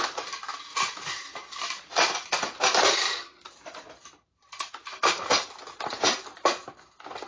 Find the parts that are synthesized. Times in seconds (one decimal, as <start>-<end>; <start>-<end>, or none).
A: 0.7-4.7